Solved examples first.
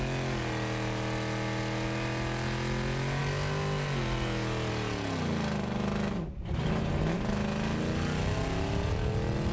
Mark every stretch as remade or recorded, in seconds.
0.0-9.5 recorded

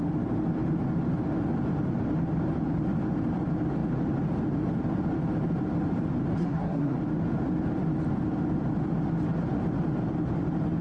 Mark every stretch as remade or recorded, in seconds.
0.0-6.4 recorded; 6.4-7.0 remade; 7.0-10.8 recorded

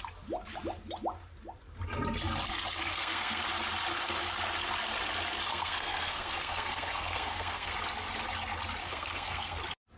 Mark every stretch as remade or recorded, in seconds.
0.0-2.9 recorded; 2.9-3.4 remade; 3.4-5.5 recorded; 5.5-7.7 remade; 7.7-8.8 recorded; 8.8-9.6 remade; 9.6-10.0 recorded

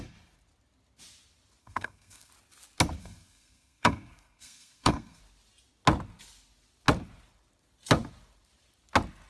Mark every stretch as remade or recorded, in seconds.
0.0-1.6 recorded; 1.6-2.3 remade; 2.3-3.0 recorded; 3.0-5.2 remade; 5.2-9.3 recorded

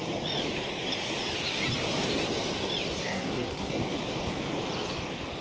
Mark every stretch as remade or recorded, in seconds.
0.0-3.0 recorded; 3.0-3.8 remade; 3.8-5.4 recorded

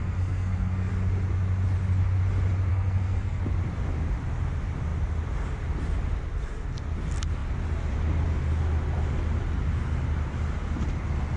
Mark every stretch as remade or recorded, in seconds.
0.0-0.9 remade; 0.9-2.7 recorded; 2.7-3.4 remade; 3.4-11.4 recorded

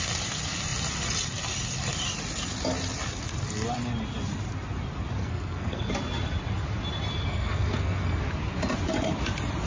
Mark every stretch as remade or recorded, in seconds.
0.0-5.2 recorded; 5.2-5.9 remade; 5.9-7.3 recorded; 7.3-8.2 remade; 8.2-9.7 recorded